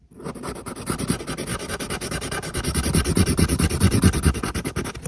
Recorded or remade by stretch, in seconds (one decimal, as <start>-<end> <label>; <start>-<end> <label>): 0.0-1.5 recorded; 1.5-2.8 remade; 2.8-5.1 recorded